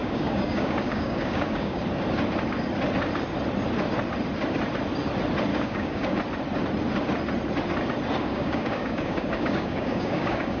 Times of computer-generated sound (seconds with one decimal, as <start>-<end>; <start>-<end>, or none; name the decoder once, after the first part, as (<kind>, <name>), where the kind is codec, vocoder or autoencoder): 0.0-1.8 (codec, DAC); 5.5-6.2; 8.2-10.6